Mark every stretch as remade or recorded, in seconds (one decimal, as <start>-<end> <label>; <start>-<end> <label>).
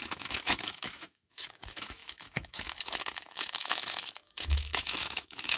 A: 0.0-5.6 remade